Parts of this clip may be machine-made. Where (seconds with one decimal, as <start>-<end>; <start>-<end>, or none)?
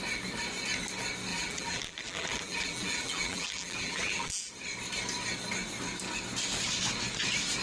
1.3-4.5